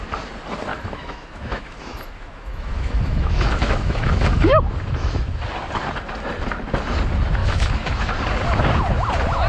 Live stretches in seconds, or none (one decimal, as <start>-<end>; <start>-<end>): 0.0-0.7; 5.4-7.4; 8.1-9.5